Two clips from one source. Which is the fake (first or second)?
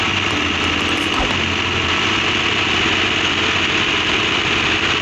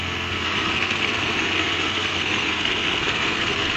second